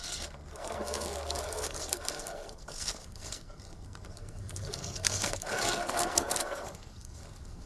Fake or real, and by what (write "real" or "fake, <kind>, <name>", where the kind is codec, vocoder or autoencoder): fake, codec, SNAC